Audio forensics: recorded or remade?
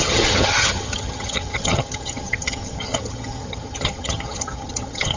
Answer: remade